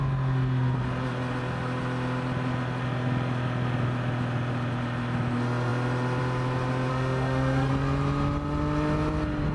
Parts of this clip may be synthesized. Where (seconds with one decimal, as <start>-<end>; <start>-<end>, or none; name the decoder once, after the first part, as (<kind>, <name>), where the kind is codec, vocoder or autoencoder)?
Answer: 6.9-7.7 (autoencoder, DAC-VAE)